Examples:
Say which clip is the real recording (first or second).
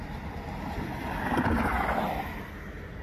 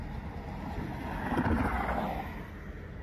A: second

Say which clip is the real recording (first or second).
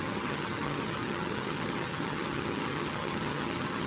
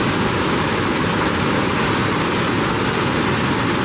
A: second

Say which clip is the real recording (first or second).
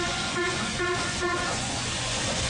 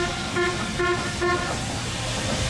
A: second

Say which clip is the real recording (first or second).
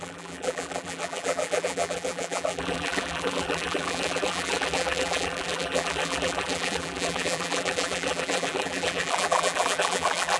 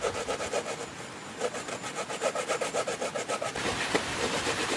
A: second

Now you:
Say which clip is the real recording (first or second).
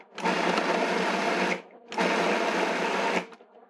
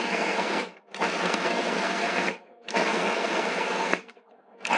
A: first